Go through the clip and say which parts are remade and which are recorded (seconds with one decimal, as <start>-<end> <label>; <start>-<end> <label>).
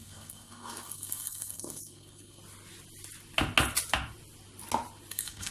0.0-2.4 remade; 2.4-5.1 recorded; 5.1-5.5 remade